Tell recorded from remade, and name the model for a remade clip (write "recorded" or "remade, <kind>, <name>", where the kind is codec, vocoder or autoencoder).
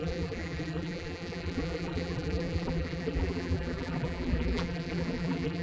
remade, vocoder, BigVGAN v2